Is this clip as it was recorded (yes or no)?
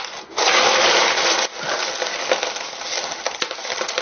yes